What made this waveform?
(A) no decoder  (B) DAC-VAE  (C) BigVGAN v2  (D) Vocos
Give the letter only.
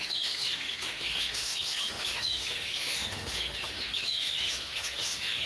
B